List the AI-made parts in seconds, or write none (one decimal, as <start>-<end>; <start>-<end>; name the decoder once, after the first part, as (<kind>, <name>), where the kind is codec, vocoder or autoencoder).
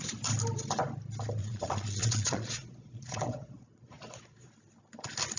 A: 1.4-4.5 (vocoder, Vocos)